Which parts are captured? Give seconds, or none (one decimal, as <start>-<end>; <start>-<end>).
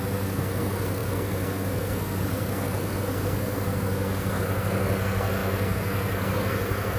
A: none